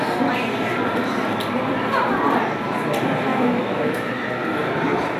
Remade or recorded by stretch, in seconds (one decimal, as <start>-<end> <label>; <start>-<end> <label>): 0.0-3.3 recorded; 3.3-4.1 remade; 4.1-5.2 recorded